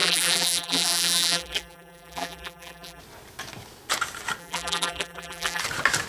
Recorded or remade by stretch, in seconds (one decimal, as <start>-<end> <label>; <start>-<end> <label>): 0.0-3.0 remade; 3.0-4.4 recorded; 4.4-5.6 remade; 5.6-6.1 recorded